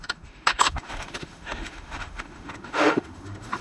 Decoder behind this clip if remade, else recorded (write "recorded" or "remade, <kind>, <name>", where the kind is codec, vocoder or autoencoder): remade, autoencoder, DAC-VAE